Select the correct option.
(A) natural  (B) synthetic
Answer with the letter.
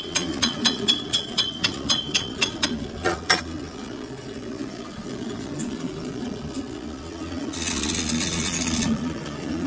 B